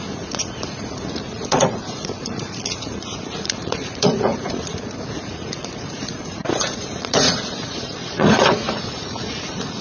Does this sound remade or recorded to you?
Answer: remade